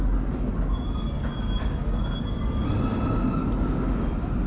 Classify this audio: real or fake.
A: real